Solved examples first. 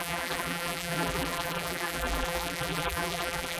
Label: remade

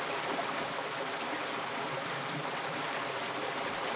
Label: recorded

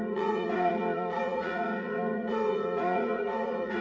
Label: remade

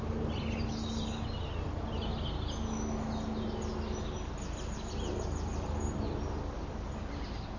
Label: recorded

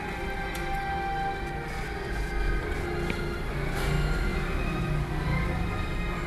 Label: recorded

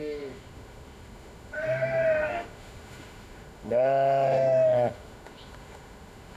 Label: remade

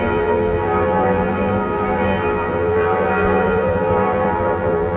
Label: remade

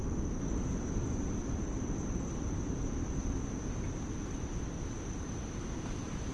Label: recorded